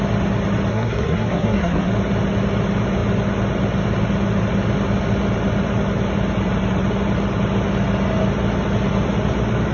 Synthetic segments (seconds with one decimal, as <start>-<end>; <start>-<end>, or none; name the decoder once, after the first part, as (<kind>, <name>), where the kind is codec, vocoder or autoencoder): 0.7-1.9 (codec, SNAC)